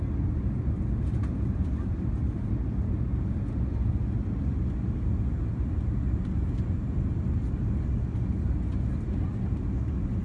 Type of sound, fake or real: real